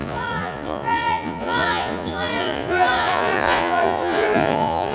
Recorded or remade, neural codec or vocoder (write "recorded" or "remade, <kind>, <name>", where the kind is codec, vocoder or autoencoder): remade, vocoder, Vocos